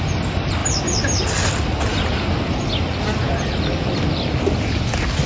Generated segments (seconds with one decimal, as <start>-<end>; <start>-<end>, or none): none